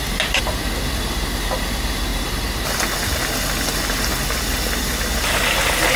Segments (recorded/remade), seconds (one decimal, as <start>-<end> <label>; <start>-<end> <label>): 0.0-2.1 recorded; 2.1-2.7 remade; 2.7-6.0 recorded